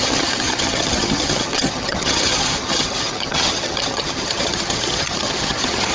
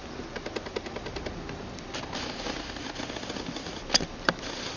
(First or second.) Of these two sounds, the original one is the second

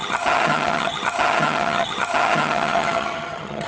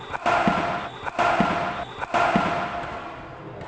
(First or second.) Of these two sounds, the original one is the second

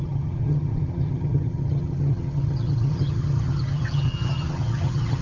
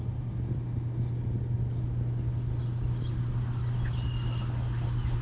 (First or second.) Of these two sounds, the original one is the second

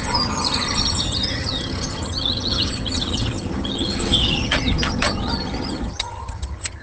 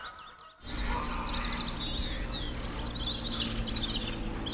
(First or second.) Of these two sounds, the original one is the second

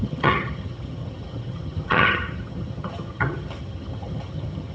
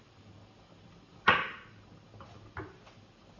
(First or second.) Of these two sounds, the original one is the second